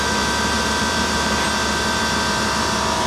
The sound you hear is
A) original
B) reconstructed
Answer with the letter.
B